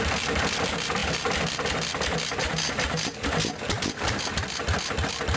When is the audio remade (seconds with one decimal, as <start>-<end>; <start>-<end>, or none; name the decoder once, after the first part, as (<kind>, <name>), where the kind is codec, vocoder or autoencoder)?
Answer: none